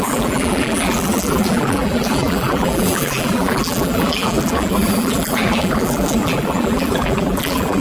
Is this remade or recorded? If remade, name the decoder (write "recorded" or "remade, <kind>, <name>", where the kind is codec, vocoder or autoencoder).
remade, vocoder, BigVGAN v2